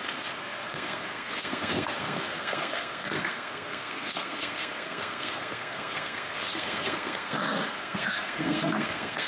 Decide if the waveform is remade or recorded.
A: remade